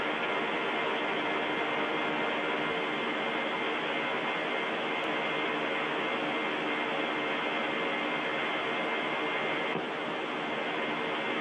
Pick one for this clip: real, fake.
real